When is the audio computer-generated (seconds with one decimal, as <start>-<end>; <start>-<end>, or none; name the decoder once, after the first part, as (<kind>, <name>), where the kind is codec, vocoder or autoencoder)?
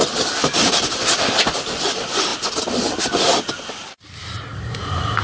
none